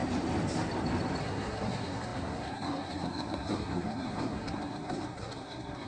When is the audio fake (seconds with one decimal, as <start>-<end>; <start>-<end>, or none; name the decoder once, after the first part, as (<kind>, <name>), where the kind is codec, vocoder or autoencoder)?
1.2-5.9 (codec, SNAC)